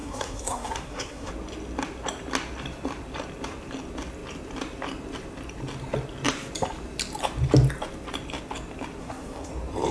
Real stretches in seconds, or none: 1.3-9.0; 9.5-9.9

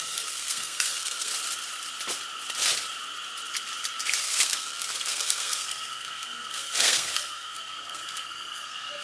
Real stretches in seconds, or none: 1.3-4.2

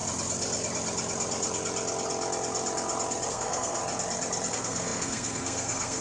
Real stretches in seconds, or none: 0.0-3.3; 3.8-4.5

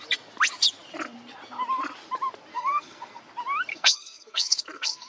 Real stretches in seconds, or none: 0.0-2.5; 3.2-3.7

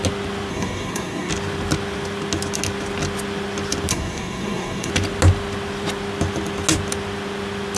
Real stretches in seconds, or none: 0.0-0.5; 1.3-3.9; 4.9-7.8

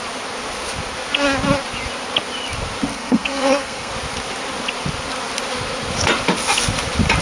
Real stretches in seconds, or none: 0.0-2.9; 3.9-7.2

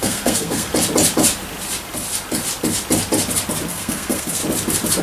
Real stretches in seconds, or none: 0.7-3.7; 4.4-5.0